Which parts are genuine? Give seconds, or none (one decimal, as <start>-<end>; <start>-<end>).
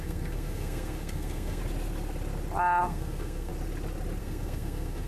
1.6-2.8; 3.5-4.2